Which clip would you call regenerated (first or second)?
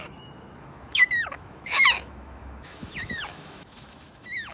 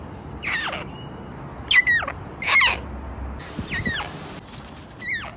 first